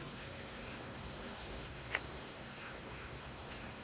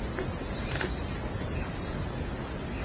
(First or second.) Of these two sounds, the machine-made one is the first